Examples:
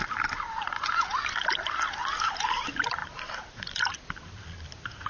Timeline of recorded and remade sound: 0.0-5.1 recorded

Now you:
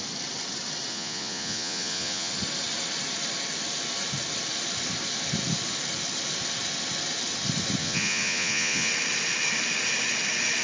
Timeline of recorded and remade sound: 0.0-0.9 recorded; 0.9-2.3 remade; 2.3-7.8 recorded; 7.8-8.9 remade; 8.9-10.6 recorded

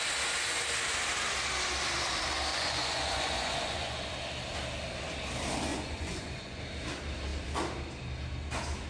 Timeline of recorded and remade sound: 0.0-2.5 recorded; 2.5-4.1 remade; 4.1-5.7 recorded; 5.7-6.6 remade; 6.6-8.9 recorded

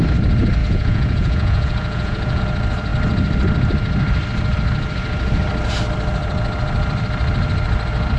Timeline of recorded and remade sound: 0.0-0.6 recorded; 0.6-2.4 remade; 2.4-8.2 recorded

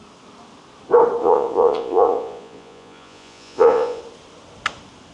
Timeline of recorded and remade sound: 0.0-1.2 recorded; 1.2-4.0 remade; 4.0-5.1 recorded

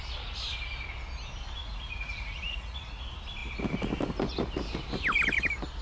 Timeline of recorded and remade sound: 0.0-1.6 recorded; 1.6-3.0 remade; 3.0-5.8 recorded

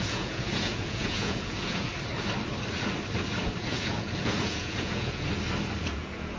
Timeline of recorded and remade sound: 0.0-1.9 remade; 1.9-3.6 recorded; 3.6-5.3 remade; 5.3-5.8 recorded; 5.8-6.4 remade

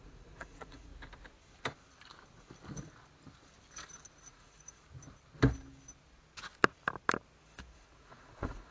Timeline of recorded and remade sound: 0.0-0.9 remade; 0.9-4.2 recorded; 4.2-4.8 remade; 4.8-7.4 recorded; 7.4-8.7 remade